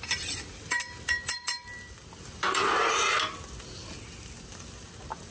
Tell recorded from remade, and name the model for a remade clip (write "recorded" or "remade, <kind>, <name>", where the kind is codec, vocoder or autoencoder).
recorded